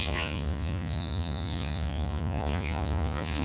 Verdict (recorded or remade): remade